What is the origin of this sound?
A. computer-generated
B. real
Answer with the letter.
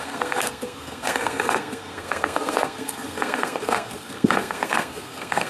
A